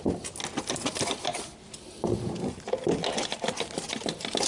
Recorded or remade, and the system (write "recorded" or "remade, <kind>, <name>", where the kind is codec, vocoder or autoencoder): recorded